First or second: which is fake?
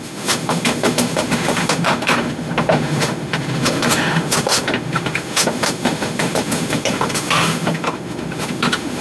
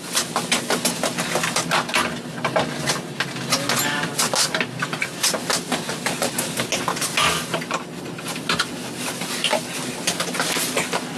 first